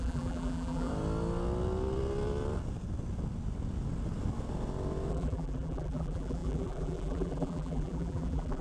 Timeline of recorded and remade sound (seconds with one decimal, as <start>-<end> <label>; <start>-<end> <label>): 0.0-0.9 remade; 0.9-5.1 recorded; 5.1-8.6 remade